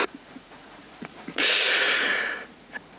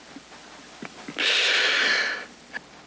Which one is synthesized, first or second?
first